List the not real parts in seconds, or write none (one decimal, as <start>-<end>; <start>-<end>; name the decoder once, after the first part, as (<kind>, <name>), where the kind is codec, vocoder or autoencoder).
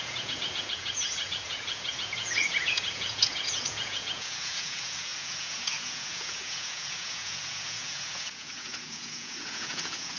0.0-10.2 (vocoder, Vocos)